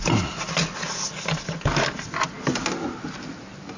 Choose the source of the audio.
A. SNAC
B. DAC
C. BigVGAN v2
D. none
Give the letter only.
D